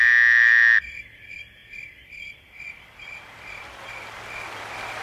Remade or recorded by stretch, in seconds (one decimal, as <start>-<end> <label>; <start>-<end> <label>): 0.0-5.0 recorded